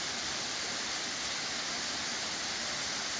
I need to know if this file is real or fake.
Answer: real